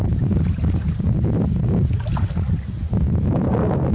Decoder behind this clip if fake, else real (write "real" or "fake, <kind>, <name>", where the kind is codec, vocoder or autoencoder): real